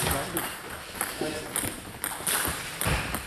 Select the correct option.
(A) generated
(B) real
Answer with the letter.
B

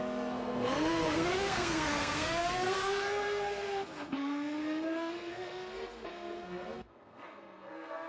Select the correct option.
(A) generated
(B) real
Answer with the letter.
A